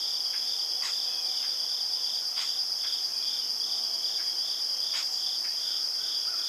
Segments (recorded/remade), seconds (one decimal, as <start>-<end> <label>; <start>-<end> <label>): 0.0-6.5 recorded